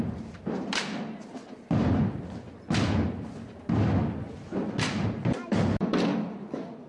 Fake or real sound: real